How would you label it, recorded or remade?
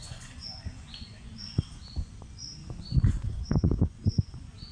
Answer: remade